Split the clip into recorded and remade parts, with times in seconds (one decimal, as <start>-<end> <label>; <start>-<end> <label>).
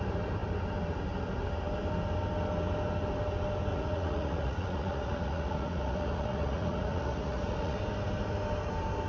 0.0-3.7 recorded; 3.7-7.8 remade; 7.8-9.1 recorded